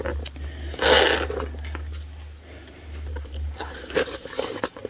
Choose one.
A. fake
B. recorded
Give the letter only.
B